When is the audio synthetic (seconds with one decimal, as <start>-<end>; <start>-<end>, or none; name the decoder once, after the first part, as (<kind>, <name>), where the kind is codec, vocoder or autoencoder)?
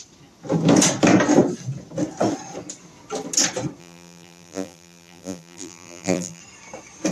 3.8-6.4 (vocoder, BigVGAN v2)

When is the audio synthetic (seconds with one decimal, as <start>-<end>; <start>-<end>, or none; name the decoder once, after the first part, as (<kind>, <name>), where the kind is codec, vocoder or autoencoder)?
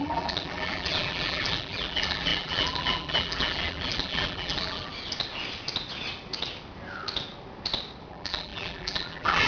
0.0-4.9 (vocoder, BigVGAN v2); 8.1-9.5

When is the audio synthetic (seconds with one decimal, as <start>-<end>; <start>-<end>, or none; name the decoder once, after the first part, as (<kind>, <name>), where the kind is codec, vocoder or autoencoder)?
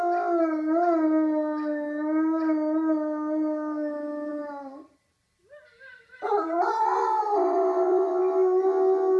4.3-8.2 (vocoder, BigVGAN v2)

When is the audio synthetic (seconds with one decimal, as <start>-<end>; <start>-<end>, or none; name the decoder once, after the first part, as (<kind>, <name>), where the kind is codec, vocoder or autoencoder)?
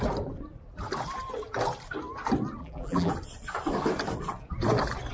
2.6-3.1 (vocoder, BigVGAN v2)